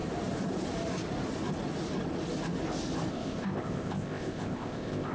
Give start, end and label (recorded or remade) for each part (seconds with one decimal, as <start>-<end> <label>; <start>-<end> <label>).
0.0-3.1 recorded; 3.1-5.1 remade